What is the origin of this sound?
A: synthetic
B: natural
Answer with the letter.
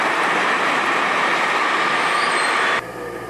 A